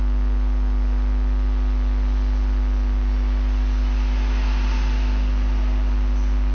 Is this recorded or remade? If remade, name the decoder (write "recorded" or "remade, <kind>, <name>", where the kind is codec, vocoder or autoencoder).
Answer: recorded